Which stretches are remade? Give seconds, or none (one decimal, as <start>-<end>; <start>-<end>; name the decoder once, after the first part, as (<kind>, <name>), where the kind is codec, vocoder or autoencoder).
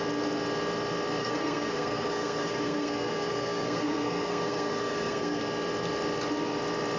1.2-5.4 (codec, SNAC)